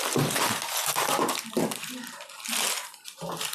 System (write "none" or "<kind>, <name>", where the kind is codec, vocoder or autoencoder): none